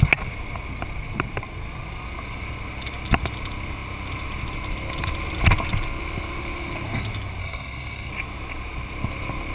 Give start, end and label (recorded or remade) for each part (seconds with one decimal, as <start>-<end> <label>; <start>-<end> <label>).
0.0-7.4 recorded; 7.4-8.1 remade; 8.1-9.5 recorded